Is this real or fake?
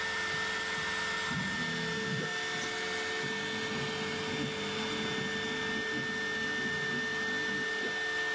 real